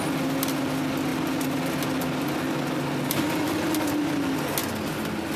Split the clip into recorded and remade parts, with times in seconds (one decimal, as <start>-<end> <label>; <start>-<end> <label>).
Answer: 0.0-5.4 recorded